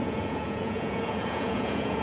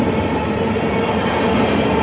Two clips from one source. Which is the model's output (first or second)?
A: first